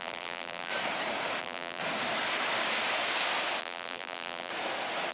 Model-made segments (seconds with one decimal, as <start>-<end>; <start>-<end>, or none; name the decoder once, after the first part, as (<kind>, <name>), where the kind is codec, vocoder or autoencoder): 0.0-0.7 (vocoder, BigVGAN v2); 1.4-1.8; 3.6-4.5